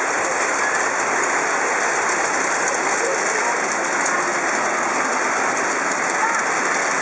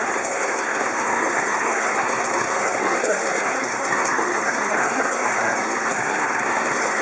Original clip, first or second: first